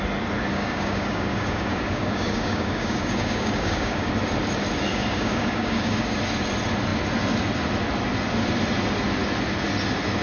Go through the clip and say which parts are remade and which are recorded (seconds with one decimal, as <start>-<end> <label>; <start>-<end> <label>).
0.0-0.5 recorded; 0.5-4.1 remade; 4.1-4.9 recorded; 4.9-6.2 remade; 6.2-10.2 recorded